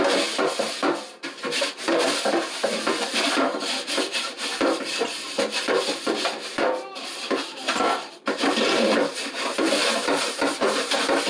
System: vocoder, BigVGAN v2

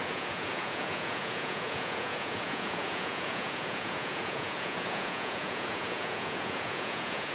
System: vocoder, Vocos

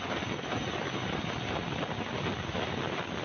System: none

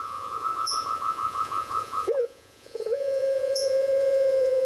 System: vocoder, Vocos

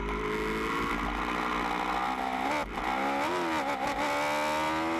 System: none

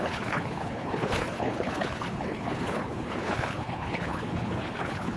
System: codec, HILCodec